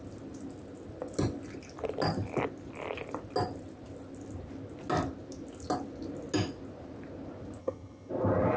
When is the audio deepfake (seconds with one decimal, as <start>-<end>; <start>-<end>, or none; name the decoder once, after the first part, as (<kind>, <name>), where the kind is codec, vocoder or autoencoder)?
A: 7.6-8.1 (vocoder, HiFi-GAN)